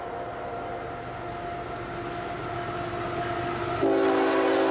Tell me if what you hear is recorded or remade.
recorded